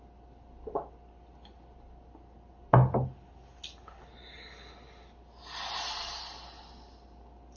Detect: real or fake real